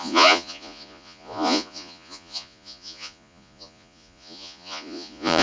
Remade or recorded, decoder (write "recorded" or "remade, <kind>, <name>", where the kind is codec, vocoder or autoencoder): remade, vocoder, Vocos